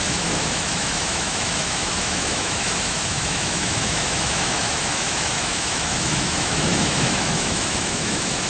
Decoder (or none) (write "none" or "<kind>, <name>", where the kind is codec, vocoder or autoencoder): autoencoder, DAC-VAE